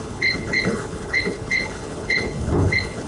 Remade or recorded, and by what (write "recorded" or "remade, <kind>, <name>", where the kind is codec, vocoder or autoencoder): remade, codec, HILCodec